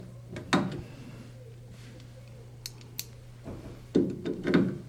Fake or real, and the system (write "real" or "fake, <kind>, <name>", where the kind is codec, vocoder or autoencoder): real